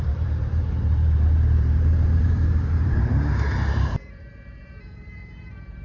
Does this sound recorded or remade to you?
remade